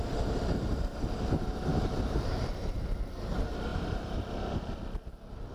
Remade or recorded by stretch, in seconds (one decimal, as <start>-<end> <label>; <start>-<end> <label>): 0.0-1.7 recorded; 1.7-2.6 remade; 2.6-3.7 recorded; 3.7-4.3 remade; 4.3-5.5 recorded